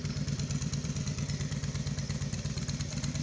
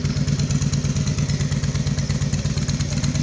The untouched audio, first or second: second